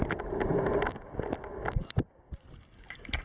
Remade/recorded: recorded